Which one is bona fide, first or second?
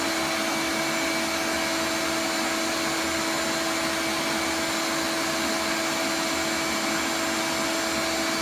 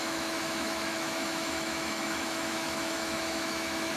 first